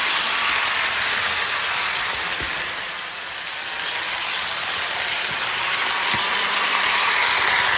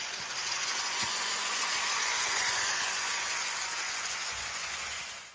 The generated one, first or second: second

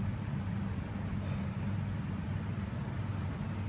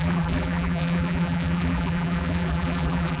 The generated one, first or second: second